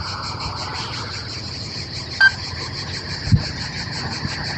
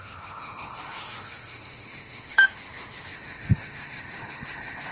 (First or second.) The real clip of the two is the first